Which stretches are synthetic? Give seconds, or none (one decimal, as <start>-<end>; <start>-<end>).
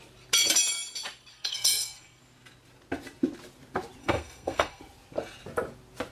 1.3-2.2; 4.0-4.8